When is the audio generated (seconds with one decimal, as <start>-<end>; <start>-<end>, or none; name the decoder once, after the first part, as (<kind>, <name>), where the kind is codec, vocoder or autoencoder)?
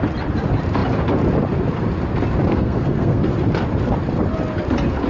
2.5-3.3 (codec, SNAC)